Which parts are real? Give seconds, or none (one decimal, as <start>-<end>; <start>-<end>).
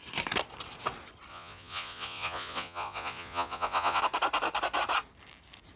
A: 0.0-1.3; 4.0-5.8